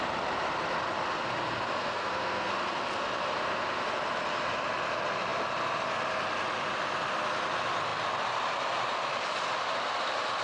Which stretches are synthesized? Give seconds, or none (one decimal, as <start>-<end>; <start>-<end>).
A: 1.8-2.5